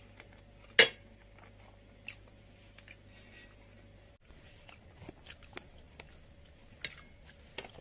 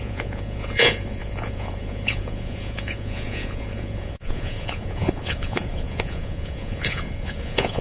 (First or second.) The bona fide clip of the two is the first